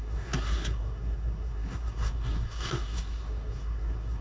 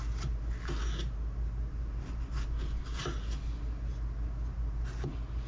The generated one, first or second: first